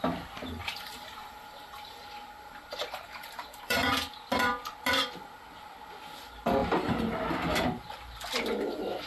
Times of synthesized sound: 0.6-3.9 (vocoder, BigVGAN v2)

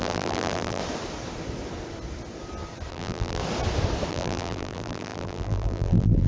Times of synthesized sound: 0.0-0.8 (vocoder, BigVGAN v2); 2.9-3.4; 4.1-6.3

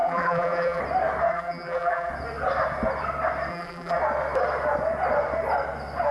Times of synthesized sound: 0.0-0.8 (vocoder, BigVGAN v2); 1.3-2.1; 3.5-4.0

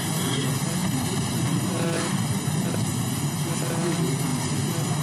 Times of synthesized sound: 0.8-2.3 (vocoder, BigVGAN v2)

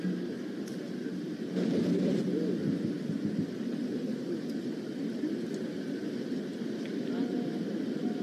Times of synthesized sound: 0.7-1.9 (vocoder, BigVGAN v2)

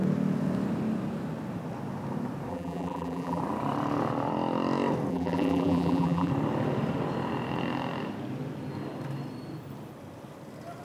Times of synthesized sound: 2.5-3.4 (vocoder, BigVGAN v2); 5.1-6.3

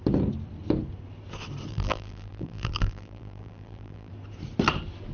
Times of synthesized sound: 1.7-4.1 (vocoder, BigVGAN v2)